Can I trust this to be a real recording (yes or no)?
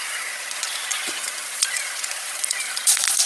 no